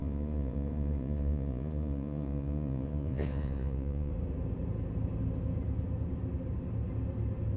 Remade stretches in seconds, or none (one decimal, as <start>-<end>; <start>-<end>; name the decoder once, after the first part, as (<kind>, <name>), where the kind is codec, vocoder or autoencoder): 0.0-4.1 (vocoder, Vocos)